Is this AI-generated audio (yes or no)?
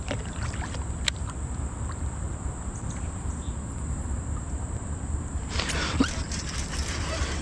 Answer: yes